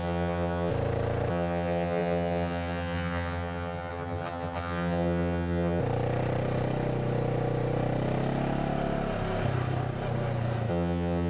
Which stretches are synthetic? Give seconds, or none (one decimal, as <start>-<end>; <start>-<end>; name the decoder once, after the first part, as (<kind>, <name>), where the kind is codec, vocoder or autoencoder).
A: 0.0-0.7 (vocoder, HiFi-GAN); 1.3-5.8; 10.7-11.3